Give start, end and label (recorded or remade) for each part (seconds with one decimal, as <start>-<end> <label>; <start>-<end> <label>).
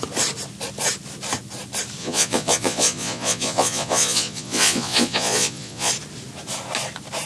0.0-2.0 recorded; 2.0-5.9 remade; 5.9-7.3 recorded